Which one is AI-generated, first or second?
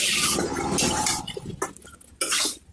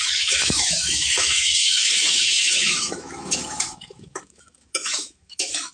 second